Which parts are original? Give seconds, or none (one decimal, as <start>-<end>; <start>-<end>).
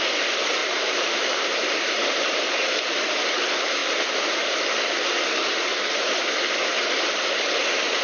0.0-0.6; 3.4-3.8; 4.9-5.7; 6.4-8.0